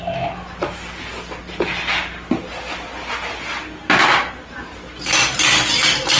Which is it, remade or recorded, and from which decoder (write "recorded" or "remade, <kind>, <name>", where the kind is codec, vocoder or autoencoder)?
recorded